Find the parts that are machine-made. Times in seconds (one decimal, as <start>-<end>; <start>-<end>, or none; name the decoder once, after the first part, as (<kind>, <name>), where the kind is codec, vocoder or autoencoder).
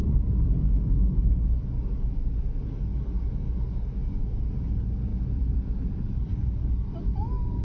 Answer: 0.0-0.6 (vocoder, BigVGAN v2); 5.1-6.0